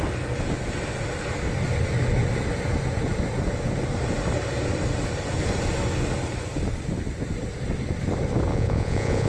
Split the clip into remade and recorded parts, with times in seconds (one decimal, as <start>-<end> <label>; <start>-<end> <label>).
0.0-8.5 recorded; 8.5-9.3 remade